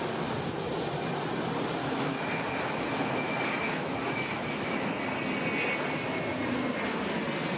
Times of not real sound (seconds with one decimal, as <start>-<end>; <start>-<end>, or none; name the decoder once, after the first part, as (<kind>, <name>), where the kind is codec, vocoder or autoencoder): 1.8-5.0 (autoencoder, DAC-VAE)